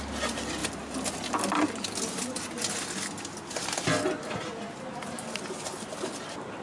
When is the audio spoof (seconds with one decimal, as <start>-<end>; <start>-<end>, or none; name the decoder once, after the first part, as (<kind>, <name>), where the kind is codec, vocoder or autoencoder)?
none